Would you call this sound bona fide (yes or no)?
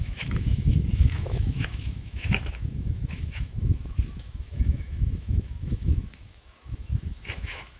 no